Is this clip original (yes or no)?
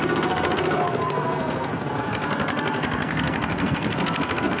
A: no